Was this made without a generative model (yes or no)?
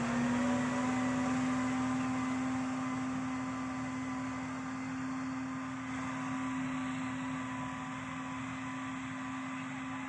yes